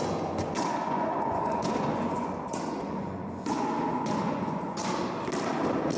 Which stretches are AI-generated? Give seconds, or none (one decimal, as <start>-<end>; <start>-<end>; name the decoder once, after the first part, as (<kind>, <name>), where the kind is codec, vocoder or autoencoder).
0.0-4.8 (vocoder, Vocos)